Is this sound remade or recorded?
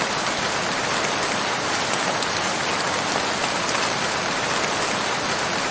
recorded